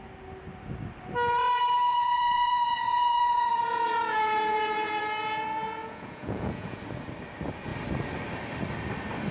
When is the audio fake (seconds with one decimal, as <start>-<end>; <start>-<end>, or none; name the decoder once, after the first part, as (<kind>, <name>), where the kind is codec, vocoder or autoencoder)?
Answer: 1.9-5.0 (vocoder, Vocos); 5.8-6.8